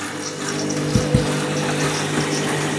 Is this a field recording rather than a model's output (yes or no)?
yes